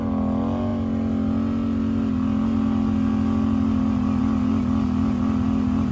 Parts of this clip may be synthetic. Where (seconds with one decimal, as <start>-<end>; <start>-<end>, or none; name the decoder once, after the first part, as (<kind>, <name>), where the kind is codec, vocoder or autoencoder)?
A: none